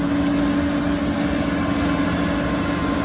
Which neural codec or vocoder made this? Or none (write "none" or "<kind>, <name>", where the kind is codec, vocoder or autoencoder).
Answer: none